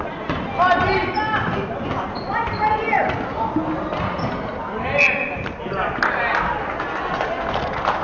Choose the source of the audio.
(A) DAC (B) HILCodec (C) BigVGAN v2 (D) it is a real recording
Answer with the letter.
D